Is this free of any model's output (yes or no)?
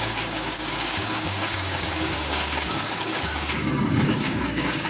no